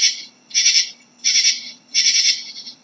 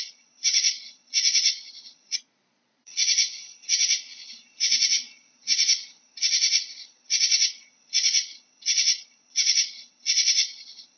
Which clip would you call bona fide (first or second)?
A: first